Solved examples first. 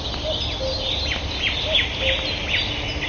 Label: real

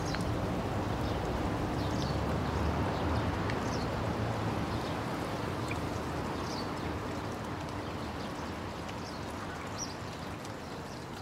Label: real